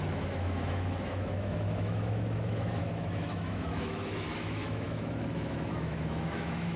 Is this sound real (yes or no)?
no